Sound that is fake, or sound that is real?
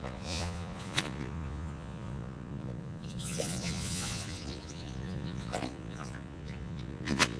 fake